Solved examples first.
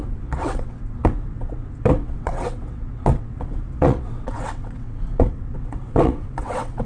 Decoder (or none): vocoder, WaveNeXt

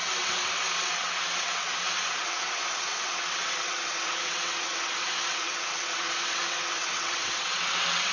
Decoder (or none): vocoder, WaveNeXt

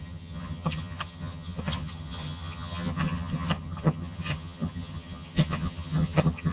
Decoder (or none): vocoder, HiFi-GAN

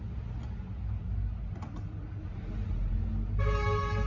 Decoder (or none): none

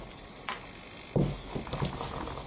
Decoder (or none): none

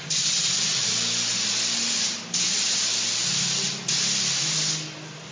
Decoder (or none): none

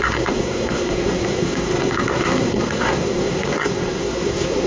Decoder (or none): codec, SNAC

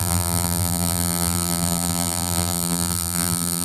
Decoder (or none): vocoder, BigVGAN v2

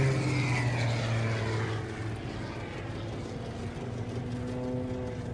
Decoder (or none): none